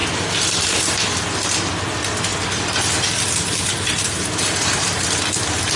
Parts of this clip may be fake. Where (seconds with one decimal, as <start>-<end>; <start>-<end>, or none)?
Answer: none